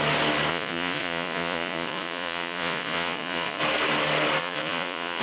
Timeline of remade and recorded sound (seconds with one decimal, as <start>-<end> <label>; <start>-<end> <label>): 0.0-0.5 recorded; 0.5-3.6 remade; 3.6-4.4 recorded; 4.4-5.2 remade

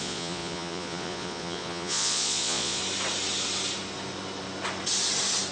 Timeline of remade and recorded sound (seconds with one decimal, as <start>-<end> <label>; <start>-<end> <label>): 0.0-2.8 remade; 2.8-5.5 recorded

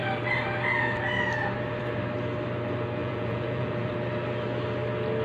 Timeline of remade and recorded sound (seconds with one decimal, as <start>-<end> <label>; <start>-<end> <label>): 0.0-3.0 recorded; 3.0-3.9 remade; 3.9-5.2 recorded

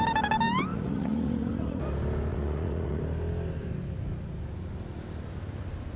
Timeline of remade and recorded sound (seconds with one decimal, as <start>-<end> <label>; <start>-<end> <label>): 0.0-0.7 recorded; 0.7-1.8 remade; 1.8-2.3 recorded; 2.3-3.0 remade; 3.0-6.0 recorded

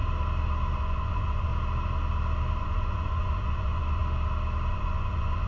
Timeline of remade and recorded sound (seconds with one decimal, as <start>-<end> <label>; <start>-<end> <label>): 0.0-0.8 recorded; 0.8-1.5 remade; 1.5-2.6 recorded; 2.6-4.0 remade; 4.0-4.7 recorded; 4.7-5.5 remade

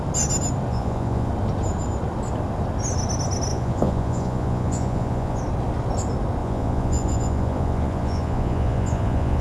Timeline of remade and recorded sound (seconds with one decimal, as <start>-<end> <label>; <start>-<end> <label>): 0.0-0.7 recorded; 0.7-1.3 remade; 1.3-3.5 recorded; 3.5-5.4 remade; 5.4-6.4 recorded; 6.4-9.4 remade